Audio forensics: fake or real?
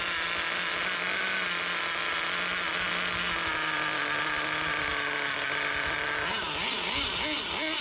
real